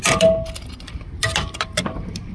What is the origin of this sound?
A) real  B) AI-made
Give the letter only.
A